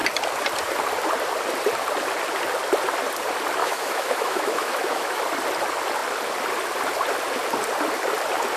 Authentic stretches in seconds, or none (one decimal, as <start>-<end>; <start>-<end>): 0.0-3.6; 5.2-8.6

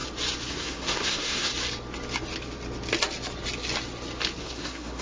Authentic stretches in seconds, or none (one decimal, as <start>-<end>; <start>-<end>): 0.0-0.5; 1.5-4.4

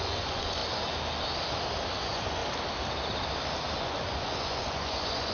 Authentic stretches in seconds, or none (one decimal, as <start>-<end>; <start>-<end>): 0.6-2.0; 2.4-3.8